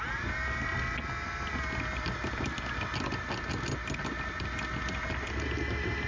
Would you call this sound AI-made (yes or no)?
no